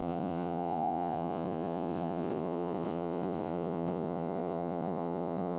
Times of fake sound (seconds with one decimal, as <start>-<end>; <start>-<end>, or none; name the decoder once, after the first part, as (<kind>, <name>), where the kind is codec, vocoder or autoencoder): 0.0-5.6 (vocoder, Vocos)